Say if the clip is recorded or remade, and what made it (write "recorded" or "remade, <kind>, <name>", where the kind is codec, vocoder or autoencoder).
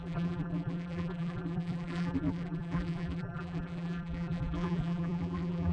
remade, vocoder, BigVGAN v2